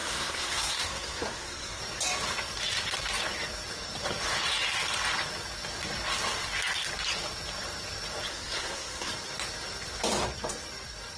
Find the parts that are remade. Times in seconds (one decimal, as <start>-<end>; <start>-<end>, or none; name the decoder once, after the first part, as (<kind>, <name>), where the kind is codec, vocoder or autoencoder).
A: 0.0-1.8 (codec, SNAC); 8.3-9.1